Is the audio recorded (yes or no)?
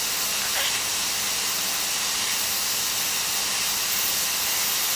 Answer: yes